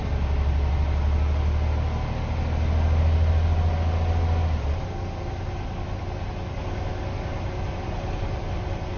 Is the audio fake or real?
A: real